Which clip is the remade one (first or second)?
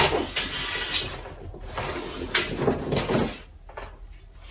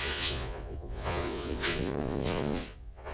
second